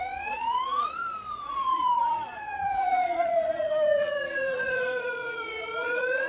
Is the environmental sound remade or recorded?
remade